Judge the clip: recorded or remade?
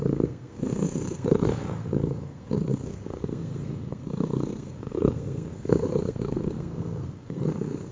remade